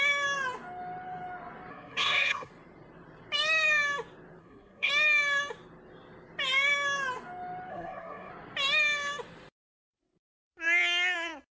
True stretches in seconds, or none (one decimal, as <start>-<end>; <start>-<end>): 0.0-1.7; 2.5-4.4; 4.9-7.7; 8.3-11.5